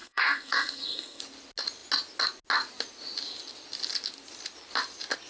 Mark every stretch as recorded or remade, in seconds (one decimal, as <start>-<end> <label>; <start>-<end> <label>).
0.0-1.2 remade; 1.2-5.3 recorded